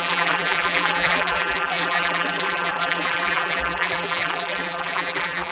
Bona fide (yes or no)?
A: no